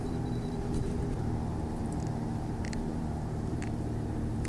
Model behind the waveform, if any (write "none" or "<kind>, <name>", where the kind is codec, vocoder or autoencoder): vocoder, BigVGAN v2